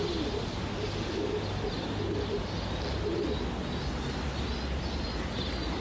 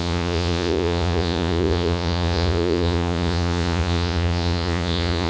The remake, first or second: second